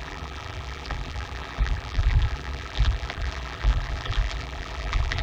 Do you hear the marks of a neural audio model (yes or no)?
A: yes